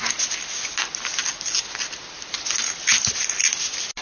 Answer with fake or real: real